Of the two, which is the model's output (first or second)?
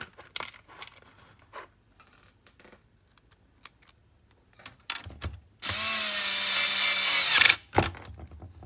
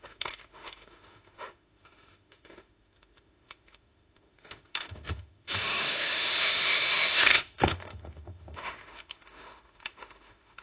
second